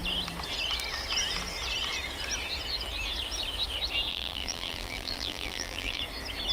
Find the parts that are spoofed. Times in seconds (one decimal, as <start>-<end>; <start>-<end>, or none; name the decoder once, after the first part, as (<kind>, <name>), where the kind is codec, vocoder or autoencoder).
4.1-6.0 (vocoder, BigVGAN v2)